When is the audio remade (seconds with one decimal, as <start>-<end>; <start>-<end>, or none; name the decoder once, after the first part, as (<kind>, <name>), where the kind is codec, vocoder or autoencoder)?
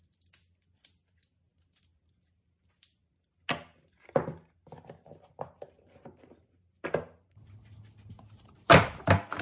none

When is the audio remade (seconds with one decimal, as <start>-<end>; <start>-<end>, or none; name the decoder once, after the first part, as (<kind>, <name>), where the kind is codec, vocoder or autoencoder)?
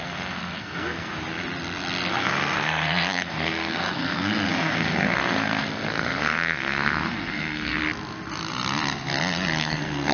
0.0-1.1 (codec, SNAC); 2.1-7.8; 9.6-10.1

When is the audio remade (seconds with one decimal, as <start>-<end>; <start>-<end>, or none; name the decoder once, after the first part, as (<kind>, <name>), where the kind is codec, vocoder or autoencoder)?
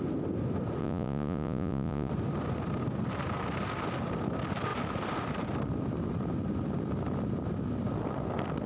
0.8-2.1 (vocoder, Vocos)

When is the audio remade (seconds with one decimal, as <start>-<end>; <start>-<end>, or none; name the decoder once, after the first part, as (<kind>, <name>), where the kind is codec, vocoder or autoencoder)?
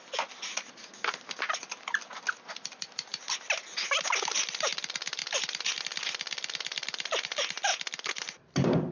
none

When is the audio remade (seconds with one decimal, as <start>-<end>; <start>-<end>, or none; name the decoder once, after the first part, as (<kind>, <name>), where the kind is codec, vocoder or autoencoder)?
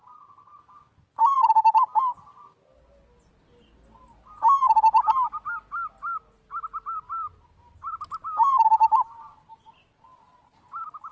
none